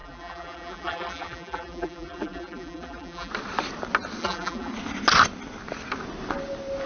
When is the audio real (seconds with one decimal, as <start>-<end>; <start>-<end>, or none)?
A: 3.3-4.2; 4.7-6.9